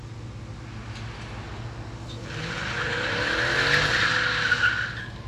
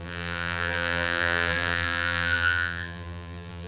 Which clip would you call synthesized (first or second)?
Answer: second